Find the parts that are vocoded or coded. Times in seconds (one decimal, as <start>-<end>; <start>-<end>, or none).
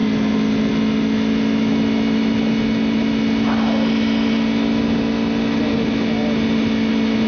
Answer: none